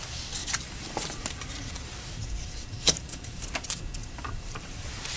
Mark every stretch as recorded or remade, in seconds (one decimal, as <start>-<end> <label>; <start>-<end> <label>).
0.0-0.4 recorded; 0.4-3.4 remade; 3.4-4.0 recorded; 4.0-5.2 remade